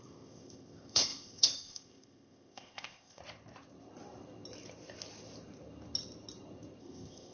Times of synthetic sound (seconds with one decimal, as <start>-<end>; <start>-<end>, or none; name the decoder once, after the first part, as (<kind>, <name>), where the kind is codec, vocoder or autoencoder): 0.0-3.2 (codec, ZipCodec); 6.8-7.3